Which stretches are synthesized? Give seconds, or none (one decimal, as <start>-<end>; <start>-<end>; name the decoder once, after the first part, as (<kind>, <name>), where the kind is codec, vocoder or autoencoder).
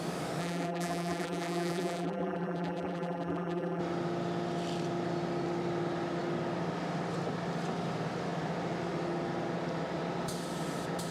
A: 0.4-3.8 (vocoder, BigVGAN v2)